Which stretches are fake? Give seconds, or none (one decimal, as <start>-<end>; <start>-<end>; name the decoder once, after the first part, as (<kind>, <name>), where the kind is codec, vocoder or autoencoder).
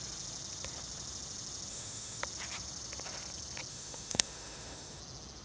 1.7-2.2 (autoencoder, DAC-VAE); 3.7-5.0